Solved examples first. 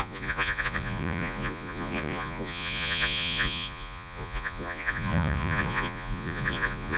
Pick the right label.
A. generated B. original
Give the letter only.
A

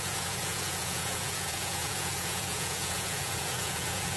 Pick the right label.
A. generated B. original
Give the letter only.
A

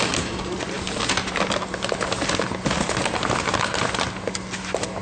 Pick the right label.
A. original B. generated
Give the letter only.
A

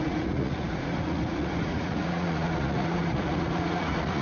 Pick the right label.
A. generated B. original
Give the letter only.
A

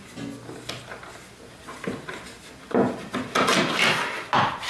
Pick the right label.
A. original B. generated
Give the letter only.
A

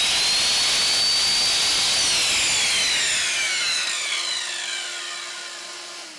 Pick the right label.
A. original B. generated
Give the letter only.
A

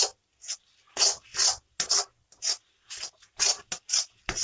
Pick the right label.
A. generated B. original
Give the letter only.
B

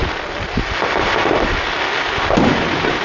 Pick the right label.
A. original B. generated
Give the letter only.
A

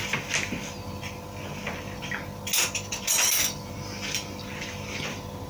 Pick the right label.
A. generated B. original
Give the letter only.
B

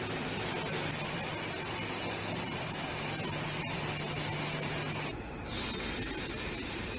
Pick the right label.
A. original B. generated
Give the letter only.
A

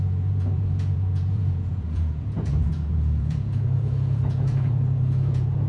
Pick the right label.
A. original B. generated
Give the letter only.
B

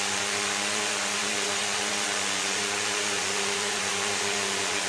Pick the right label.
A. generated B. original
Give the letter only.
A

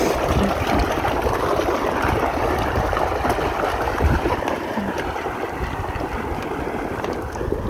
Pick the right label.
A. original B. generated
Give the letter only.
A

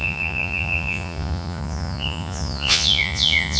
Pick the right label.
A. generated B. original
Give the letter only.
A